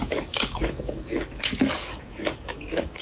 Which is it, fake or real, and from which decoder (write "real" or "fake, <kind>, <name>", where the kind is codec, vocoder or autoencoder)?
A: fake, codec, DAC